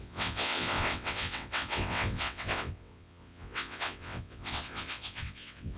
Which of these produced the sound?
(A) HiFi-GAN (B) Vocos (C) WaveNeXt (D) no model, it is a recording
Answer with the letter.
C